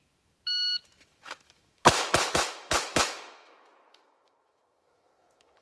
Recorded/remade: remade